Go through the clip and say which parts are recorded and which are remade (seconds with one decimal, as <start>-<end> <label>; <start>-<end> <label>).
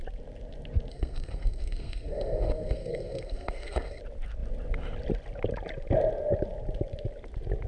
0.0-0.9 recorded; 0.9-4.0 remade; 4.0-7.7 recorded